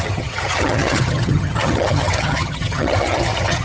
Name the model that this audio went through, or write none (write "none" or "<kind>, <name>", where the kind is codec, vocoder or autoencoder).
vocoder, HiFi-GAN